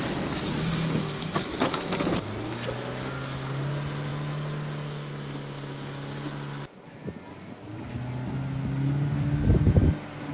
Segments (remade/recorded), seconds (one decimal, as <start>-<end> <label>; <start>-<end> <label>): 0.0-10.3 recorded